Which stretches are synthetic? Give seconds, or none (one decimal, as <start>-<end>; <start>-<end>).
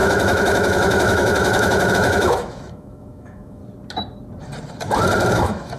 0.0-3.6; 5.3-5.8